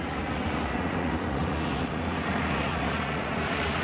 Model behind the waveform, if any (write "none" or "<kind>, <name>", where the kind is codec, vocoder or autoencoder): vocoder, Vocos